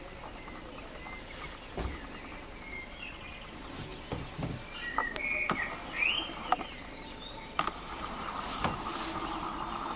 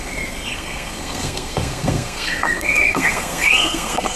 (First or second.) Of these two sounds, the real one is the first